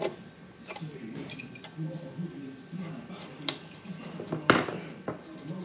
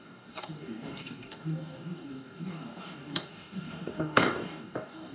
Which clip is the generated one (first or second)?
second